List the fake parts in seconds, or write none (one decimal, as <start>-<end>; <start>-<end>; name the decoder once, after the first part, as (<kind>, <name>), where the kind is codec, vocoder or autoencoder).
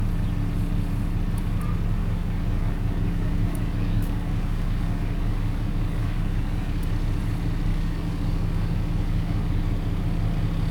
2.0-6.9 (codec, DAC); 7.7-9.6